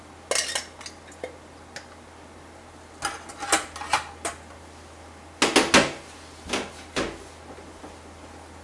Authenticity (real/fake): real